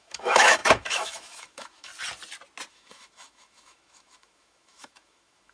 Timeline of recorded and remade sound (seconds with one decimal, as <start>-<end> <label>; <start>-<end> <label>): 0.0-1.9 remade; 1.9-2.7 recorded; 2.7-5.5 remade